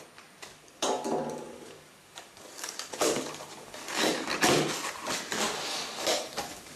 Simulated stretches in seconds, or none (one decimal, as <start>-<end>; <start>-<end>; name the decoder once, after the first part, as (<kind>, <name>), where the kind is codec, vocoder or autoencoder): 0.5-4.4 (codec, DAC); 5.7-6.8

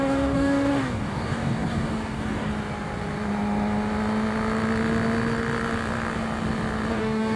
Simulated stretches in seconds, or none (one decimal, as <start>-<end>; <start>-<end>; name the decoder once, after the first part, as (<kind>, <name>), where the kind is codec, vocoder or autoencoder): 0.0-2.5 (codec, DAC); 6.9-7.4

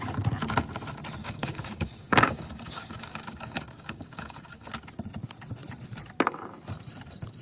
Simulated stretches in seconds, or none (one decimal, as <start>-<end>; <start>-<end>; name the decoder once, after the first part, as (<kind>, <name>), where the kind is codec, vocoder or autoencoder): 1.2-4.7 (codec, DAC)

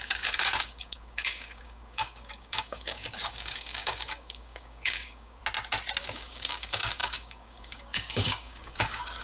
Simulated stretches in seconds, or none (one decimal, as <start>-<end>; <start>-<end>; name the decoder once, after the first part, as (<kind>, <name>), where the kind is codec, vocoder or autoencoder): 0.0-5.4 (codec, DAC); 6.0-9.2

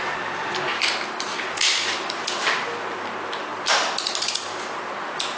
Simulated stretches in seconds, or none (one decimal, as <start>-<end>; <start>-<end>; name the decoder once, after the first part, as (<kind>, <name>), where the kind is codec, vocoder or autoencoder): none